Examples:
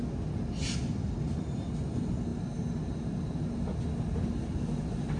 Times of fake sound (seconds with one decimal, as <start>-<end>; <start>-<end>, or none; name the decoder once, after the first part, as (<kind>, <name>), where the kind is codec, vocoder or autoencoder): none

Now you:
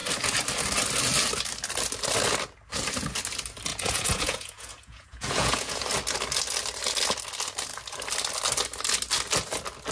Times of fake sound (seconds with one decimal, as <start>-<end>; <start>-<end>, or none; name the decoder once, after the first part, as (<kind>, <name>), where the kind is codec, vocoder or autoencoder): 3.7-5.8 (vocoder, Vocos)

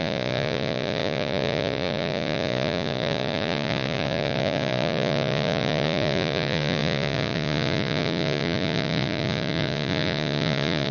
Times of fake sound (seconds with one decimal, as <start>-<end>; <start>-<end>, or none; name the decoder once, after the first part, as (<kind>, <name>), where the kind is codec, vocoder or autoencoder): 0.0-10.9 (vocoder, Vocos)

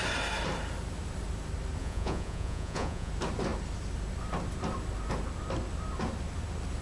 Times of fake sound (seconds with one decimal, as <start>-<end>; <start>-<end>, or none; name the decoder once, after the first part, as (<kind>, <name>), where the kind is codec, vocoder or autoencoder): 1.8-3.1 (vocoder, Vocos)

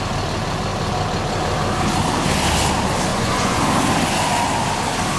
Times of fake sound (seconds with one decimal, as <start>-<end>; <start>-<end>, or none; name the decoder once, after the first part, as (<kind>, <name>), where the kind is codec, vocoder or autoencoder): 3.1-3.6 (vocoder, Vocos)

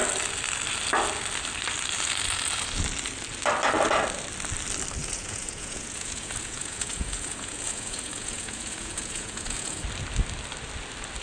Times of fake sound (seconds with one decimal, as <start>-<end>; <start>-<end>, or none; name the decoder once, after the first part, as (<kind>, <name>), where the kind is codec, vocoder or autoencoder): 5.0-9.8 (vocoder, Vocos)

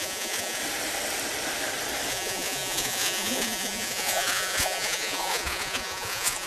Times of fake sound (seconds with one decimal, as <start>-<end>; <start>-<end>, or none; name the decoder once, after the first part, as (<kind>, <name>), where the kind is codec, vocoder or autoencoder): 0.0-0.6 (vocoder, Vocos); 2.1-6.5

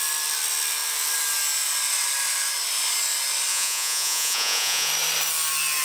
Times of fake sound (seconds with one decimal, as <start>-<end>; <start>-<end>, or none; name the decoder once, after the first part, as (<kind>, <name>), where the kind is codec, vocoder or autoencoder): 3.5-4.9 (vocoder, Vocos)